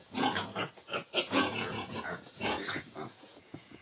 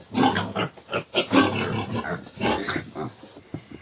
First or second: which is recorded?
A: second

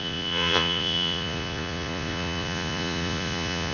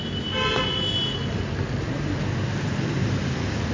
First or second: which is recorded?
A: second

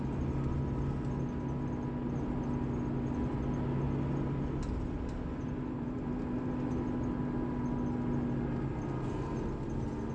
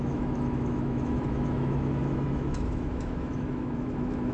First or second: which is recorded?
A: first